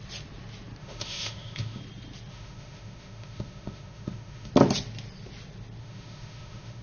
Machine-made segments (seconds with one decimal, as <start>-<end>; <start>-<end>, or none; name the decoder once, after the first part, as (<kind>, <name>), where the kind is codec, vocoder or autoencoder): 0.8-1.8 (autoencoder, DAC-VAE); 2.3-4.5; 5.8-6.8